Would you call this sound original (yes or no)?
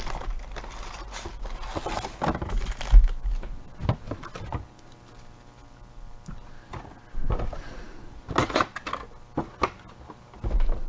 yes